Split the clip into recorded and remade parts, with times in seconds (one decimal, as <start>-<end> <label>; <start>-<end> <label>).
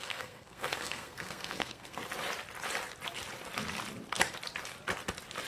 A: 0.0-2.0 remade; 2.0-5.5 recorded